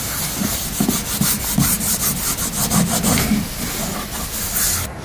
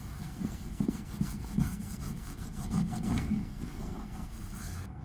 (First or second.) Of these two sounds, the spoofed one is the second